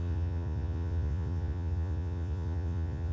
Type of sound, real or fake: fake